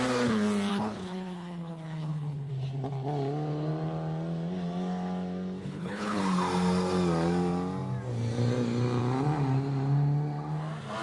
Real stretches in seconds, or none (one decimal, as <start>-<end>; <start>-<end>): 0.0-0.7; 2.5-5.6; 6.2-11.0